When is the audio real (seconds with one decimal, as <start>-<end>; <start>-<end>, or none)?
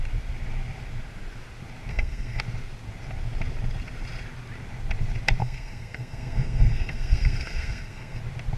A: 0.0-1.9; 2.4-5.4; 8.2-8.6